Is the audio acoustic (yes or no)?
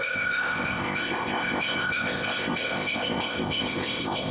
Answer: no